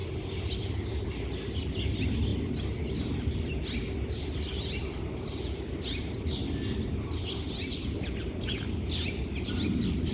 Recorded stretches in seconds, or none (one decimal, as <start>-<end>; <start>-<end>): 0.0-10.1